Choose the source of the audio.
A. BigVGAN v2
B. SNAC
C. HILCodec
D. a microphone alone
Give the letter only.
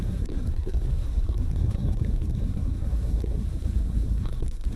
B